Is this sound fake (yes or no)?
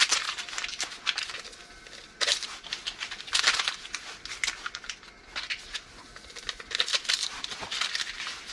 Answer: no